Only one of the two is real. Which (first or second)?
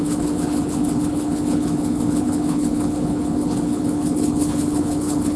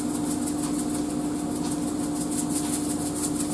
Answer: second